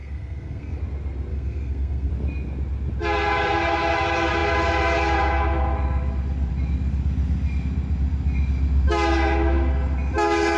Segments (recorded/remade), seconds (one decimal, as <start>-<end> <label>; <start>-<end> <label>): 0.0-0.8 remade; 0.8-1.3 recorded; 1.3-2.1 remade; 2.1-10.6 recorded